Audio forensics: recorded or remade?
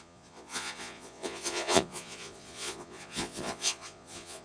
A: remade